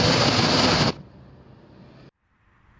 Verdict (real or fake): real